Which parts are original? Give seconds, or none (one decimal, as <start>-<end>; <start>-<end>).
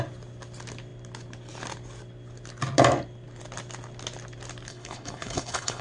0.0-4.7